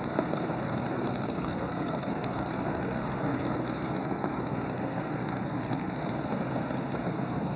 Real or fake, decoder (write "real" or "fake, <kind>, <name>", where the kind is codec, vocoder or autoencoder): fake, codec, SNAC